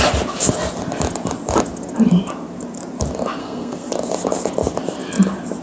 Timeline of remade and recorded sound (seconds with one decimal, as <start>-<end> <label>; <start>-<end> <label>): 0.0-3.4 recorded; 3.4-3.9 remade; 3.9-5.6 recorded